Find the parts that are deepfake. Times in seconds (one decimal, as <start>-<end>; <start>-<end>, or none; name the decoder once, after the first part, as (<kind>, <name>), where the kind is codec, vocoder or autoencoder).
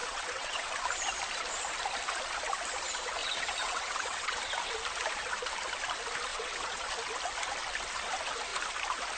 0.0-0.7 (vocoder, WaveNeXt); 3.2-4.4; 6.3-6.9